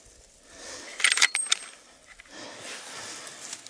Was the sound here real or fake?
real